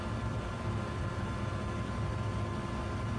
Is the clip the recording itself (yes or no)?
yes